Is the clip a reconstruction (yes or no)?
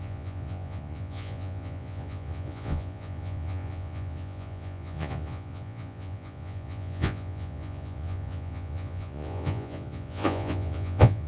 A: yes